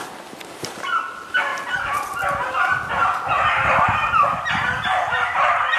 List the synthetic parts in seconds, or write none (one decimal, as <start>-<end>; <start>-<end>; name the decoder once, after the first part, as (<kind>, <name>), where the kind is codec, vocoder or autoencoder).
none